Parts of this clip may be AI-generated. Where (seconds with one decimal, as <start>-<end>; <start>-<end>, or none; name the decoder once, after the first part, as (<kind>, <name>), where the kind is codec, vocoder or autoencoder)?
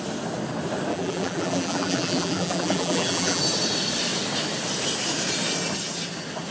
0.9-3.4 (vocoder, BigVGAN v2)